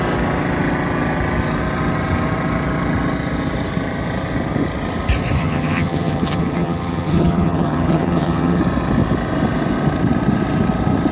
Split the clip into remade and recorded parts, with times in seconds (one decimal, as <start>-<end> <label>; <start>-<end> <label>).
0.0-5.4 recorded; 5.4-8.6 remade; 8.6-11.1 recorded